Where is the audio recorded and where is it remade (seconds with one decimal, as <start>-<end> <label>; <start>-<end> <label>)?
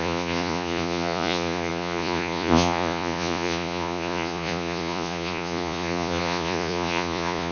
0.0-7.5 remade